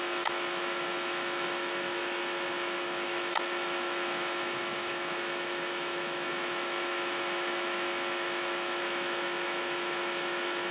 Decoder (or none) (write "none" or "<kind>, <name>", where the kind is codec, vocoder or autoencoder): autoencoder, DAC-VAE